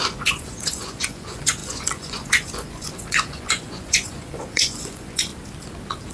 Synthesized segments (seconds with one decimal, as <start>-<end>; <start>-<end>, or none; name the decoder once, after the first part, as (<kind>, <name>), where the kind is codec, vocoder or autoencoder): 0.0-5.3 (vocoder, Vocos)